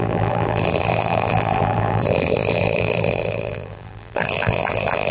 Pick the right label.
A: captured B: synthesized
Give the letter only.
B